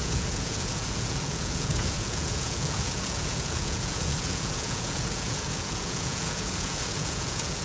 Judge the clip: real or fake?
fake